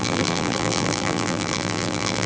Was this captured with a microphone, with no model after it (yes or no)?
no